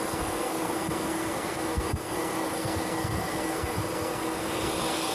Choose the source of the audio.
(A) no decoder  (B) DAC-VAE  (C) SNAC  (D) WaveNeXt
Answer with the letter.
C